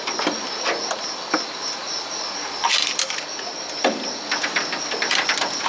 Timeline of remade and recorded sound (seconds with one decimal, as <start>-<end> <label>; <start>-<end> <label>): 0.0-5.7 recorded